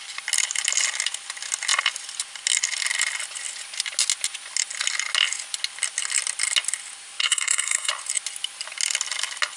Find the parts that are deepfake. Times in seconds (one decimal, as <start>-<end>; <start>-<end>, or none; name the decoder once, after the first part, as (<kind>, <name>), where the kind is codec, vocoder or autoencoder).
7.2-7.9 (codec, SNAC)